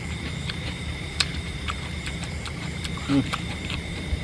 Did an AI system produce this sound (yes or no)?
yes